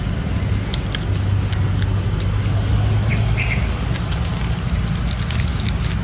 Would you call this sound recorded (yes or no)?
yes